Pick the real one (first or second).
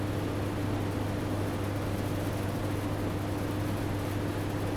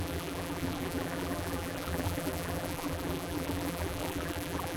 first